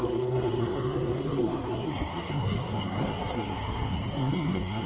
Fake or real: fake